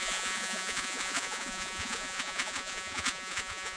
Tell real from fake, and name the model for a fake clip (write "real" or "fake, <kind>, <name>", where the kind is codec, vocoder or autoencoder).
fake, vocoder, Vocos